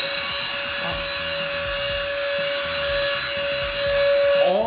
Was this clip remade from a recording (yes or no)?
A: no